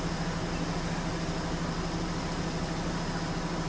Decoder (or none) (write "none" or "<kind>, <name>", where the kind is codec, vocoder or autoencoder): none